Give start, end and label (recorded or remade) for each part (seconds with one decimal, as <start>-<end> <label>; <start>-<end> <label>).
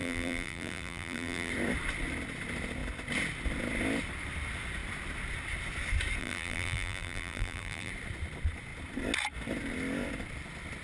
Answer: 0.0-1.5 remade; 1.5-6.2 recorded; 6.2-7.9 remade; 7.9-10.8 recorded